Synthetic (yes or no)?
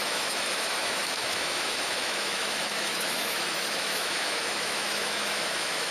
yes